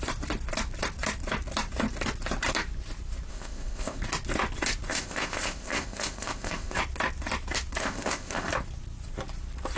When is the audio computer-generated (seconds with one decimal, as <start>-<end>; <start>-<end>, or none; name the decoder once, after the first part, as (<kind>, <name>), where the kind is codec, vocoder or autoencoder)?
3.3-4.0 (codec, ZipCodec); 4.9-6.8; 7.8-8.5